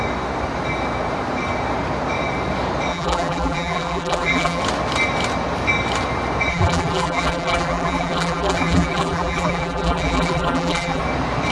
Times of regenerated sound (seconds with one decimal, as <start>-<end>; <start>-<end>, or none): 2.9-4.6; 6.5-11.0